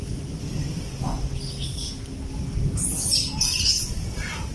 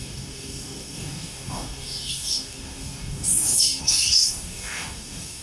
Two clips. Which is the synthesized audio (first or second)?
second